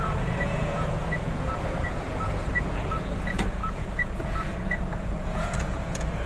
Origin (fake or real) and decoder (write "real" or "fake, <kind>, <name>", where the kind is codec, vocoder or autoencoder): fake, vocoder, Vocos